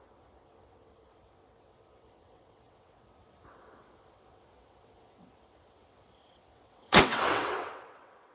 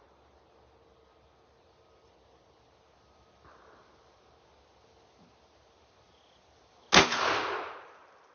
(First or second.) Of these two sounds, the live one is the second